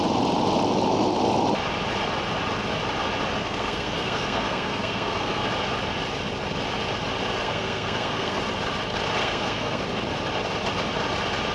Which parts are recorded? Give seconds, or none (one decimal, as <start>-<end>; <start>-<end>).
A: 0.0-3.4; 5.5-7.4; 8.4-9.2; 9.8-11.5